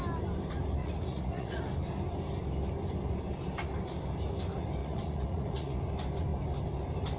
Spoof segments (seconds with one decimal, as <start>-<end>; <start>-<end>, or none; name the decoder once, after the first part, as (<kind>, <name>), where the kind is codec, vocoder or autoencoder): 0.8-1.6 (vocoder, Vocos); 4.8-5.8

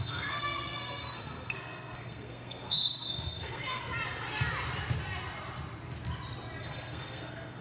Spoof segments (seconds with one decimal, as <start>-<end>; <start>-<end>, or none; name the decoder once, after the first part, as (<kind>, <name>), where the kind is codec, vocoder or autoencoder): 0.0-3.8 (codec, SNAC); 6.6-7.6

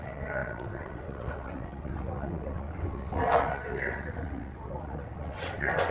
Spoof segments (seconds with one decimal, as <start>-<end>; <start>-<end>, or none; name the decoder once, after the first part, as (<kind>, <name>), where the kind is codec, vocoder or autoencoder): 0.0-5.9 (vocoder, WaveNeXt)

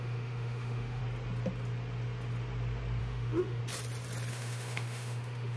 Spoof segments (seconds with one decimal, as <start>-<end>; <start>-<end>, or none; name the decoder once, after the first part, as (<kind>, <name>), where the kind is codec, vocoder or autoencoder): 0.0-1.0 (autoencoder, DAC-VAE); 3.0-3.6; 4.3-5.6

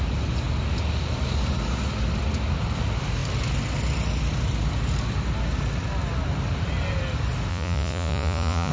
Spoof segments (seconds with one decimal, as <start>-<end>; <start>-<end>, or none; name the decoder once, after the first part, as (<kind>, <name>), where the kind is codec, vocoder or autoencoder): 7.5-8.7 (vocoder, Vocos)

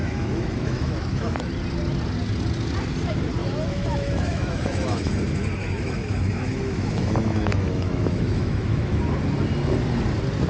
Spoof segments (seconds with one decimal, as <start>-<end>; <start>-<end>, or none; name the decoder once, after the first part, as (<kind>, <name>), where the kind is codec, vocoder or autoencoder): 0.0-1.4 (autoencoder, DAC-VAE); 3.4-5.1; 5.6-9.0

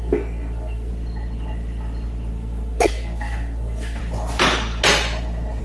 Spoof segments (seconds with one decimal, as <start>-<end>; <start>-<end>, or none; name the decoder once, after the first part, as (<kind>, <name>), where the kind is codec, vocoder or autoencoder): 0.0-0.9 (codec, SNAC); 2.3-4.0